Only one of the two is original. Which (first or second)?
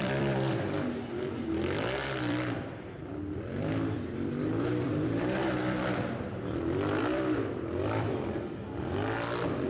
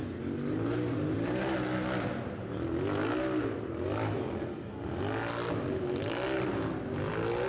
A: second